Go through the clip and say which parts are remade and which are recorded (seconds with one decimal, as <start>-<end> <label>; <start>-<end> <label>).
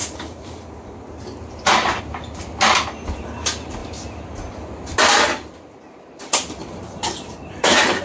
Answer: 0.0-2.0 remade; 2.0-6.6 recorded; 6.6-8.0 remade